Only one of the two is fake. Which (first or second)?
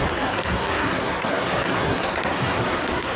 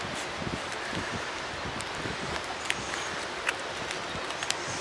first